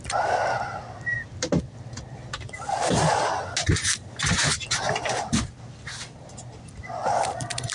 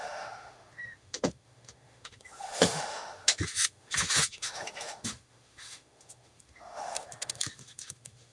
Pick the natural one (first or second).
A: first